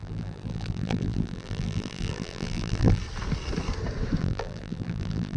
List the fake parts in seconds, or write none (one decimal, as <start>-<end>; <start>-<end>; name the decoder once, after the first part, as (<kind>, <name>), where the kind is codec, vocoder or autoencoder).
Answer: 0.0-3.0 (vocoder, BigVGAN v2); 4.2-5.4